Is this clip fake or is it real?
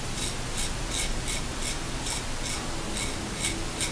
real